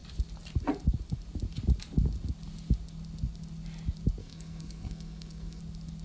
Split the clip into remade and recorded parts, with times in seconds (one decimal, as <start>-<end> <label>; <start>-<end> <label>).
0.0-4.2 recorded; 4.2-5.6 remade; 5.6-6.0 recorded

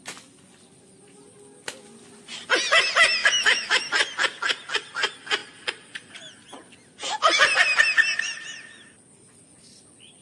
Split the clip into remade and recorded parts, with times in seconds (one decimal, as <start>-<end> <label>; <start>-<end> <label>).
0.0-3.2 recorded; 3.2-3.8 remade; 3.8-10.2 recorded

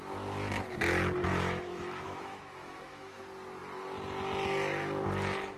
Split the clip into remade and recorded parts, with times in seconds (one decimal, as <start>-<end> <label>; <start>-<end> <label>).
0.0-1.3 recorded; 1.3-3.2 remade; 3.2-5.6 recorded